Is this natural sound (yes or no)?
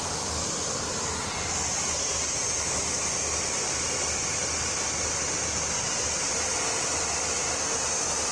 yes